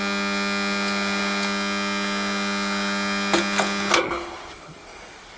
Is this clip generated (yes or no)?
no